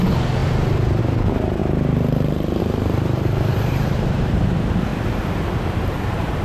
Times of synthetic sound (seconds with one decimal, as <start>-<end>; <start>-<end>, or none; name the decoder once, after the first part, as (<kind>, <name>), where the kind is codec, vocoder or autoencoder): 0.0-4.9 (vocoder, BigVGAN v2); 5.6-6.4